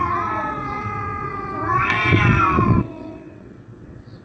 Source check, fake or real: fake